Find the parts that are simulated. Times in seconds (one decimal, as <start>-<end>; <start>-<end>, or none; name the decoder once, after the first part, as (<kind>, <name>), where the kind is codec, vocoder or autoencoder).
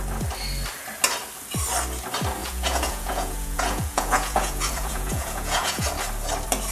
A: 2.4-5.9 (vocoder, Vocos)